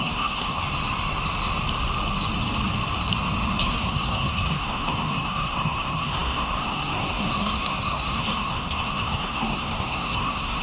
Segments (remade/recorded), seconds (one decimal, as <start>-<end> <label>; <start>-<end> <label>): 0.0-0.6 remade; 0.6-3.6 recorded; 3.6-10.6 remade